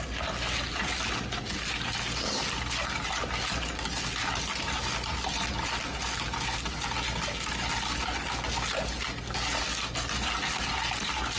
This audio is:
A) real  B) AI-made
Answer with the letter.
A